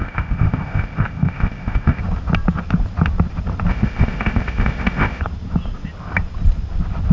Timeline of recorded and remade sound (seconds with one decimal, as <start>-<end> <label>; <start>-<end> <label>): 0.0-2.0 remade; 2.0-3.7 recorded; 3.7-5.2 remade; 5.2-7.1 recorded